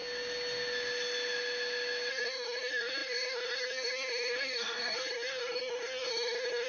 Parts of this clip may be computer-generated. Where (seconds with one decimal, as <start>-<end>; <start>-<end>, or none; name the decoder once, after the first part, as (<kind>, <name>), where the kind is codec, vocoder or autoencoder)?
2.1-6.7 (codec, SNAC)